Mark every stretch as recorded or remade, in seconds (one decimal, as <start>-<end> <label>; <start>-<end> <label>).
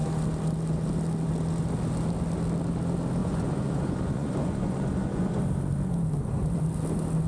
0.0-3.2 recorded; 3.2-5.4 remade; 5.4-7.3 recorded